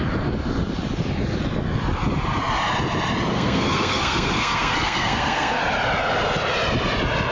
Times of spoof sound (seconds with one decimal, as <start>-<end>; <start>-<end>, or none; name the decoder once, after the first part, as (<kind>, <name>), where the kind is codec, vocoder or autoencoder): 3.3-5.6 (codec, SNAC)